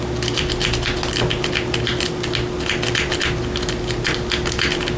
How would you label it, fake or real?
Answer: real